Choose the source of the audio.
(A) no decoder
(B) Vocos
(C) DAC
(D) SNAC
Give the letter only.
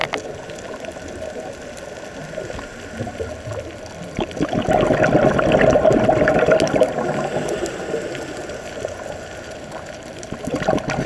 A